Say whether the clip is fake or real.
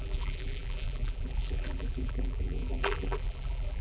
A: fake